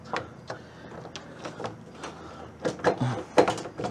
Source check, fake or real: real